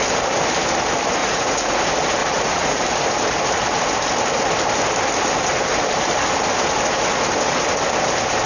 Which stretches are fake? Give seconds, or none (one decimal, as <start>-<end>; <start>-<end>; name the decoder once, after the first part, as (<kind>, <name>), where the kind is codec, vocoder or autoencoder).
1.2-1.8 (vocoder, Vocos); 2.2-2.8